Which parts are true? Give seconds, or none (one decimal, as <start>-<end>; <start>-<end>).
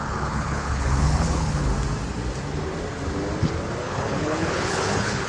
1.7-3.8